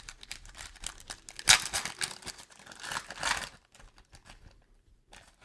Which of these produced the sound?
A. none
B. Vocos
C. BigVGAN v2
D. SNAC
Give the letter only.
A